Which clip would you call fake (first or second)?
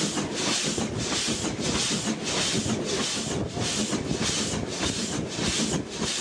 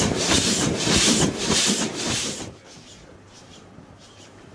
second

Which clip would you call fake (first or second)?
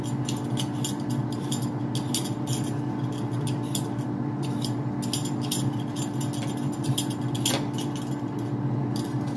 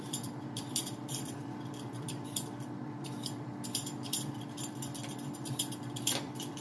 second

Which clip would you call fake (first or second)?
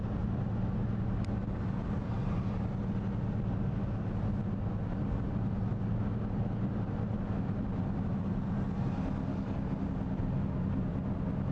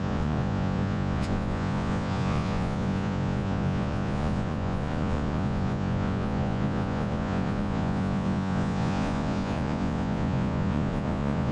second